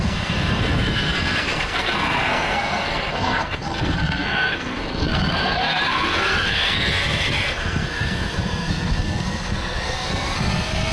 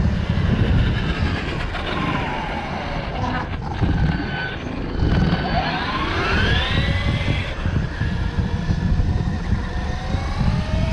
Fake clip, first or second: first